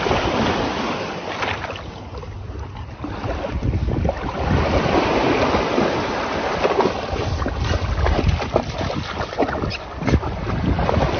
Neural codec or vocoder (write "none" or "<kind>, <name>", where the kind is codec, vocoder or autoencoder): none